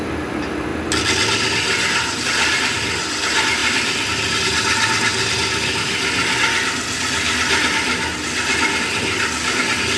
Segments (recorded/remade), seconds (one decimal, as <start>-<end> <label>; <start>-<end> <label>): 0.0-10.0 recorded